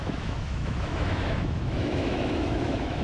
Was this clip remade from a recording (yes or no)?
yes